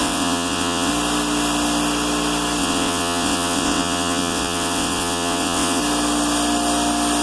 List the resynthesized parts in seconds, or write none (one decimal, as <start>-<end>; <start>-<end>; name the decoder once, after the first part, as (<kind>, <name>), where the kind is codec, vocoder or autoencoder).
0.0-0.9 (vocoder, WaveNeXt); 2.6-5.8